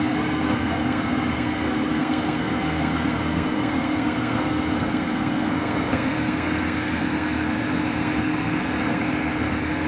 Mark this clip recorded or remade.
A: remade